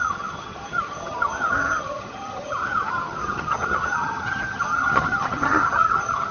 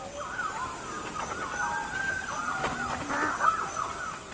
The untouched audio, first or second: second